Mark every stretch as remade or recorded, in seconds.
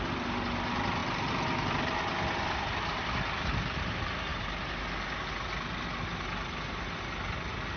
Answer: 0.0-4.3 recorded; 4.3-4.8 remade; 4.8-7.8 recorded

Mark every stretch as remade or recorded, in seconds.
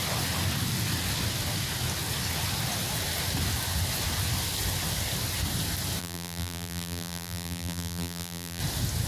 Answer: 0.0-6.0 recorded; 6.0-8.6 remade; 8.6-9.1 recorded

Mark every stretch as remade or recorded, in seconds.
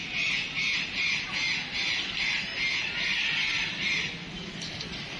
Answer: 0.0-1.1 remade; 1.1-5.2 recorded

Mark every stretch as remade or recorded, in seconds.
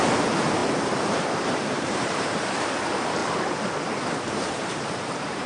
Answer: 0.0-3.2 remade; 3.2-4.3 recorded; 4.3-5.5 remade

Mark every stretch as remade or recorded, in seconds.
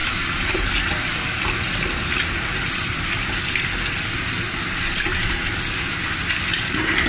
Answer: 0.0-7.1 recorded